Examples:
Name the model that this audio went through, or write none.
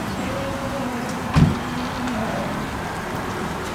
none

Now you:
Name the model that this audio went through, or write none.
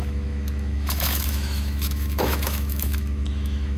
autoencoder, DAC-VAE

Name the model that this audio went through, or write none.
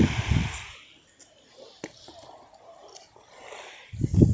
none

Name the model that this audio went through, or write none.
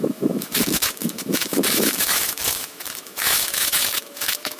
autoencoder, DAC-VAE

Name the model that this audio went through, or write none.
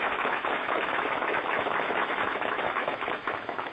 autoencoder, DAC-VAE